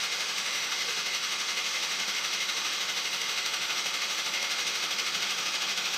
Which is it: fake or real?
fake